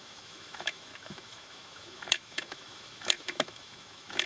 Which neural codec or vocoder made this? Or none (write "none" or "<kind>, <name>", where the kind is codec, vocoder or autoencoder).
autoencoder, DAC-VAE